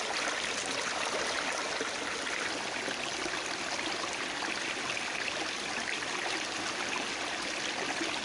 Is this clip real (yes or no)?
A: yes